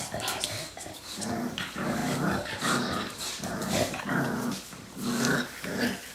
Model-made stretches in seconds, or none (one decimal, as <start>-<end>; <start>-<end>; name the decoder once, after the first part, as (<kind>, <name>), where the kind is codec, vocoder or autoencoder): 0.0-6.1 (codec, DAC)